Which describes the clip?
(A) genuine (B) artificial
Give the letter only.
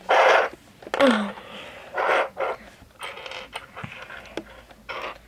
A